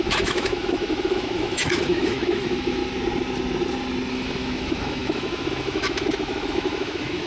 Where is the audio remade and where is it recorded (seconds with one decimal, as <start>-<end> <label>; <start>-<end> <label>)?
0.0-2.8 remade; 2.8-4.1 recorded; 4.1-7.3 remade